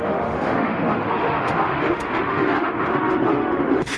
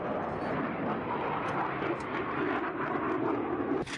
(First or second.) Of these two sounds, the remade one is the first